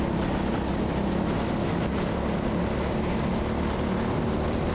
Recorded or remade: recorded